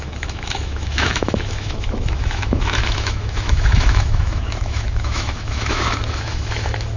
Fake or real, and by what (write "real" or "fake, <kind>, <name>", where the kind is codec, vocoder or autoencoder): fake, autoencoder, DAC-VAE